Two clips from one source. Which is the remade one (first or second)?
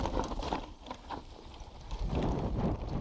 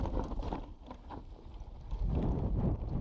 first